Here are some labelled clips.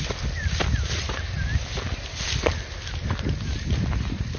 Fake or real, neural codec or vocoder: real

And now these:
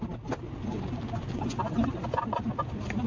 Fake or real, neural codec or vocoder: real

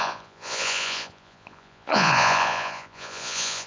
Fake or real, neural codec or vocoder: fake, vocoder, Vocos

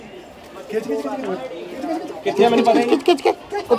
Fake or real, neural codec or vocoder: real